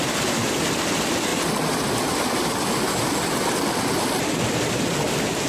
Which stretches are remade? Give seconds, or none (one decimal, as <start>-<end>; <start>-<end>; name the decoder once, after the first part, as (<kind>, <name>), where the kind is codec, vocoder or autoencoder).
none